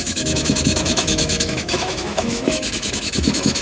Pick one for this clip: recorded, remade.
remade